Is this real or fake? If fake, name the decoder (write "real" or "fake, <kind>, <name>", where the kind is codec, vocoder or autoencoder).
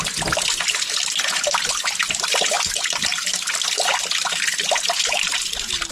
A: real